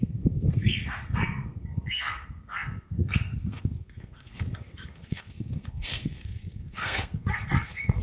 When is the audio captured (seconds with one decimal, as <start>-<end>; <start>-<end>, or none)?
none